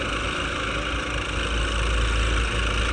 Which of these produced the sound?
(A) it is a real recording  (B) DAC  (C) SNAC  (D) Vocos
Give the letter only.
A